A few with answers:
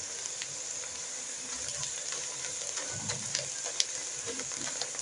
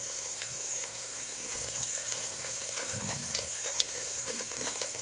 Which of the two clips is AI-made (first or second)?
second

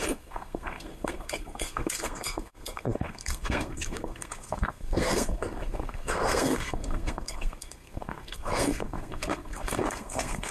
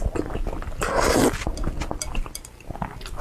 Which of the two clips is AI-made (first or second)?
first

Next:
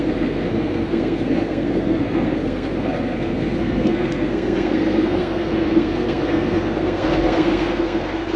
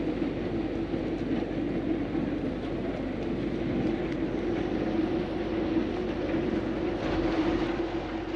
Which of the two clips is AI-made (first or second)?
first